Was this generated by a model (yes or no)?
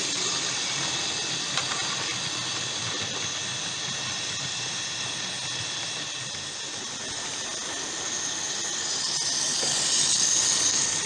no